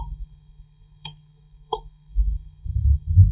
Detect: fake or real fake